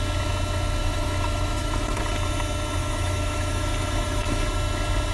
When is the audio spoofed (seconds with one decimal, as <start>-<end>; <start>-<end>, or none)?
0.8-2.0; 2.8-4.4